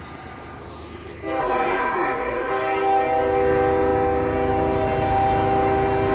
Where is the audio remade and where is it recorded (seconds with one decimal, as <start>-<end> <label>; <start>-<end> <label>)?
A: 0.0-1.4 recorded; 1.4-2.5 remade; 2.5-6.1 recorded